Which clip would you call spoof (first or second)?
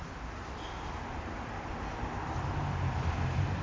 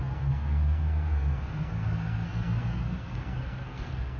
second